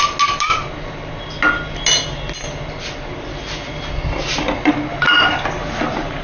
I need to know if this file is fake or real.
real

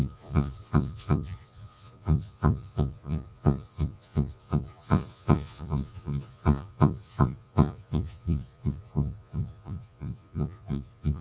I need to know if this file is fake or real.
fake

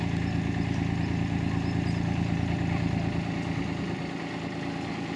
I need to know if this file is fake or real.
real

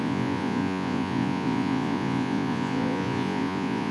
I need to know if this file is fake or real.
fake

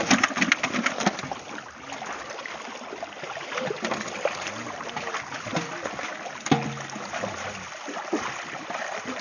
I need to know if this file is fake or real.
real